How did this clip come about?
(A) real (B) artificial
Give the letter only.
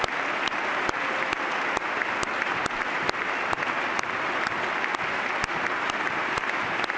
A